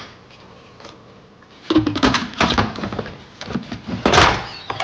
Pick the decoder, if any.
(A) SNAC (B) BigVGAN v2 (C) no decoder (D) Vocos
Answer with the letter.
C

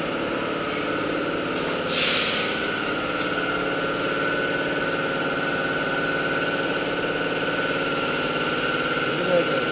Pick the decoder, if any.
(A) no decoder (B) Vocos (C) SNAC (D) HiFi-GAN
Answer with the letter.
A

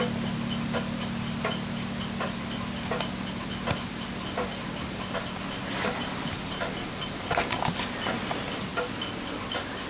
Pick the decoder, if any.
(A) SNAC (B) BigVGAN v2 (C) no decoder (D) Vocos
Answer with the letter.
C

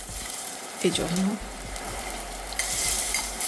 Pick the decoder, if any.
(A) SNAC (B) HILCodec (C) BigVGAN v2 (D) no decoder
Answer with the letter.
C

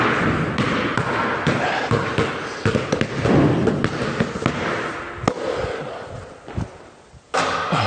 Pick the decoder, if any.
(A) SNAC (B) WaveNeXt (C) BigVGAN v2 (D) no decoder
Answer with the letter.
D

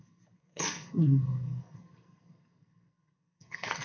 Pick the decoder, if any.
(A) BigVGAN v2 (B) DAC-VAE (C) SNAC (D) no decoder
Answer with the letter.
C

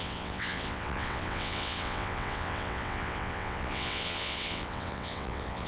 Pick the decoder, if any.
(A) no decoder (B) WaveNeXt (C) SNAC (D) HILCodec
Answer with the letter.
B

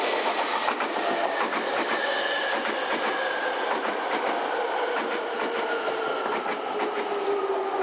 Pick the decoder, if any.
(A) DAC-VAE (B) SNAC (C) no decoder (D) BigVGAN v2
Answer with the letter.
C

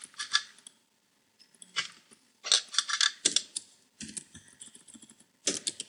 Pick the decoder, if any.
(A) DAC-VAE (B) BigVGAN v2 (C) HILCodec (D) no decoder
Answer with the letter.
D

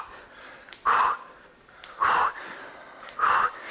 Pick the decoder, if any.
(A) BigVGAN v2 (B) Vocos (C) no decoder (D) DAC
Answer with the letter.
C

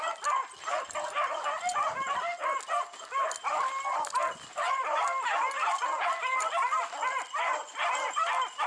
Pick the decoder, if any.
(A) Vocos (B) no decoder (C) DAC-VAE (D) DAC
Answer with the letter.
B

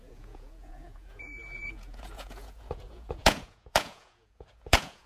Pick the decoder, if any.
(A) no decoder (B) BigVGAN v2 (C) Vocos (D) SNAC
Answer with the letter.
C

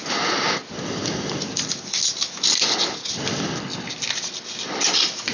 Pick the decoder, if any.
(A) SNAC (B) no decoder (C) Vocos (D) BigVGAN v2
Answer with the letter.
B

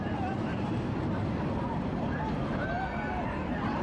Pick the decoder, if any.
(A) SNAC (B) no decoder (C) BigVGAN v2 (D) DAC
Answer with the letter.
B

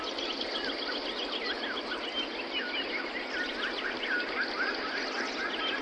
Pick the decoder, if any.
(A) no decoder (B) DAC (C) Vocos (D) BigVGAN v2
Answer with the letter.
A